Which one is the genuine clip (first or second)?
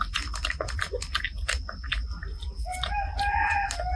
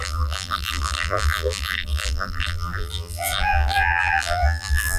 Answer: first